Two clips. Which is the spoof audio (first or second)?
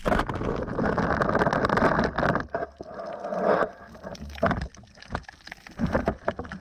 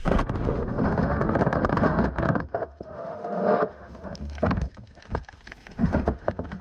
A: second